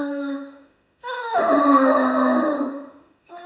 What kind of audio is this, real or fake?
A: fake